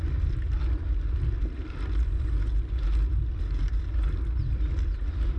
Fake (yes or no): no